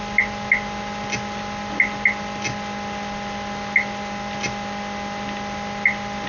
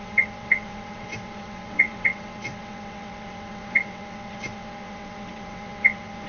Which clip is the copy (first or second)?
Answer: second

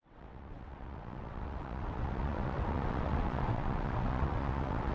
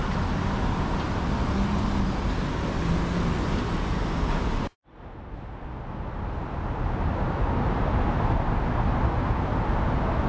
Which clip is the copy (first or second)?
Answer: first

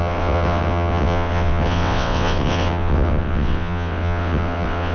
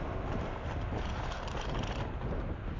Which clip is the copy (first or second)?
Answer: first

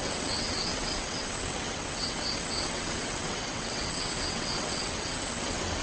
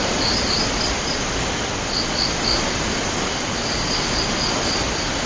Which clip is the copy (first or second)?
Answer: first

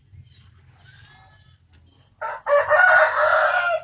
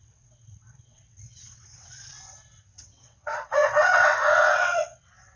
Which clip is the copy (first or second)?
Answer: second